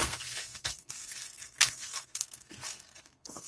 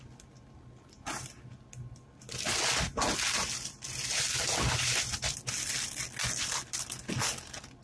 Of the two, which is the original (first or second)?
second